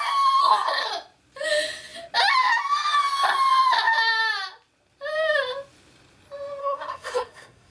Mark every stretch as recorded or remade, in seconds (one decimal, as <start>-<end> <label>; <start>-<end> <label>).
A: 0.0-0.4 recorded; 0.4-0.9 remade; 0.9-6.6 recorded; 6.6-7.7 remade